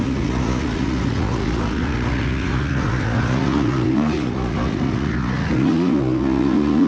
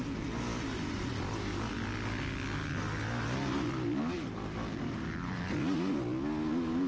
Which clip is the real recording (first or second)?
second